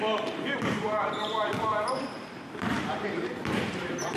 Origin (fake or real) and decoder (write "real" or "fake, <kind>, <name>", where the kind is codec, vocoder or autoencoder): fake, vocoder, BigVGAN v2